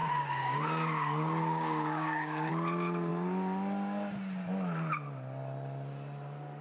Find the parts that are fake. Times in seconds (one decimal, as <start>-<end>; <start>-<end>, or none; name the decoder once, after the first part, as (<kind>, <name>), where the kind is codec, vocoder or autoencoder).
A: 0.0-2.5 (codec, DAC)